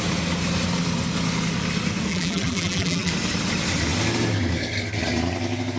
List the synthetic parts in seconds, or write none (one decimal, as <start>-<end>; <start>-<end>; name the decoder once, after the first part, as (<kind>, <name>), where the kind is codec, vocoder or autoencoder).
2.1-3.1 (vocoder, BigVGAN v2)